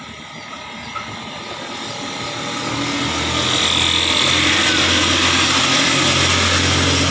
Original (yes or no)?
yes